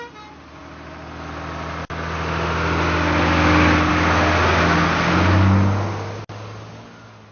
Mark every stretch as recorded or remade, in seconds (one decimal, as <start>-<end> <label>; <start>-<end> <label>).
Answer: 0.0-7.3 recorded